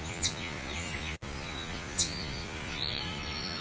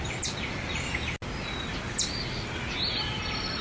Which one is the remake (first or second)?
first